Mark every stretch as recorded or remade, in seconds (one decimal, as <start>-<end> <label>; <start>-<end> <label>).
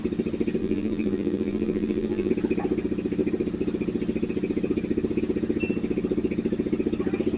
0.0-0.6 recorded; 0.6-2.3 remade; 2.3-7.4 recorded